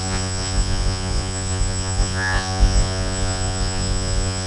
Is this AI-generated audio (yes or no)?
yes